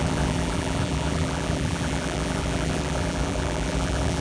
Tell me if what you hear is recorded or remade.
remade